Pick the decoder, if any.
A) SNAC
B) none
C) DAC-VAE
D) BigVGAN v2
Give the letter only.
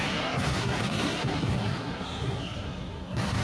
A